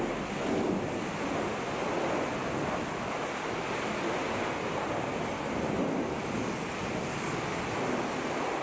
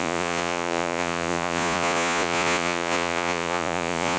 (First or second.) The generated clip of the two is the second